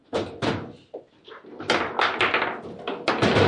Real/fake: real